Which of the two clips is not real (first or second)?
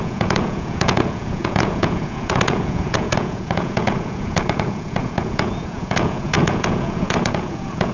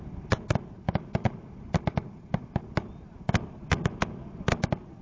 first